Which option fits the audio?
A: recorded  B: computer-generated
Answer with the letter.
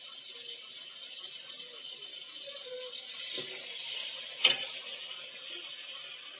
A